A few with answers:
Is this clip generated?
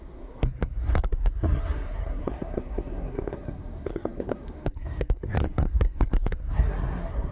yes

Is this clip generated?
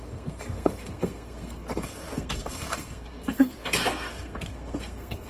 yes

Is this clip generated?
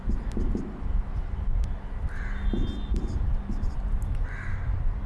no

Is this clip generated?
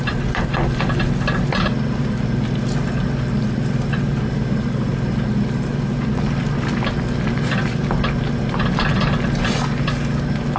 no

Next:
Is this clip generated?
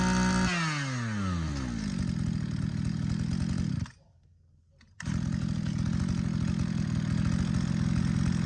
no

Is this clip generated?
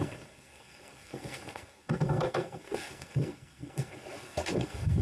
yes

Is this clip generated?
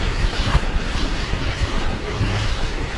yes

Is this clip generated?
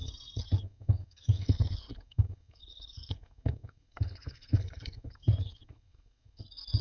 yes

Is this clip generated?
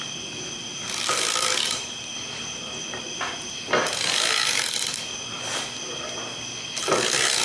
no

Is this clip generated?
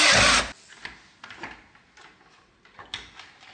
no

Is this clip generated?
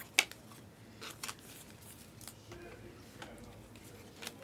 no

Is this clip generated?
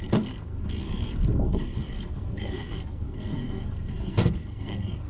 yes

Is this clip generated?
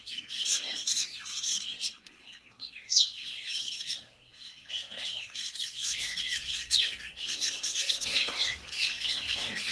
yes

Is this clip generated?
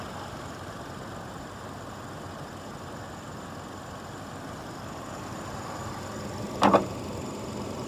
no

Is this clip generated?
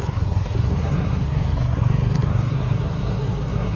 yes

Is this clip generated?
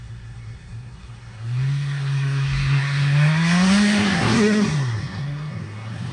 yes